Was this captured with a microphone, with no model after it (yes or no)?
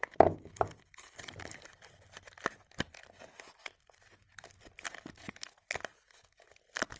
yes